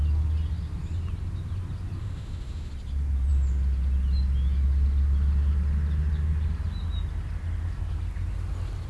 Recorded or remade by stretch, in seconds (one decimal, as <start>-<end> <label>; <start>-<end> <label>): 0.0-2.0 recorded; 2.0-2.7 remade; 2.7-8.9 recorded